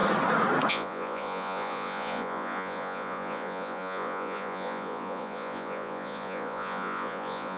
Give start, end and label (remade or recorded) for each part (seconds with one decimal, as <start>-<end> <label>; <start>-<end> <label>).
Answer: 0.0-0.7 recorded; 0.7-7.6 remade